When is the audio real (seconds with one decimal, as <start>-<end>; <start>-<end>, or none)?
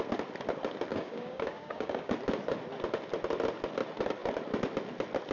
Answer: 0.0-0.9; 2.1-5.3